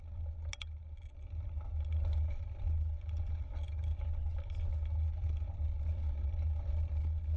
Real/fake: real